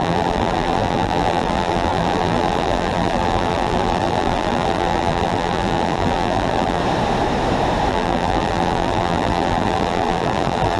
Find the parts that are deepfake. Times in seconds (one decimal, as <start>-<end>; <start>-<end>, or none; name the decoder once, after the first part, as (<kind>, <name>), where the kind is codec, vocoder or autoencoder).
0.0-6.8 (vocoder, BigVGAN v2); 7.9-10.8